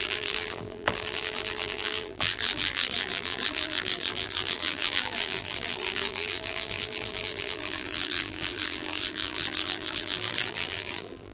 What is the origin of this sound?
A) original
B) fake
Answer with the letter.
B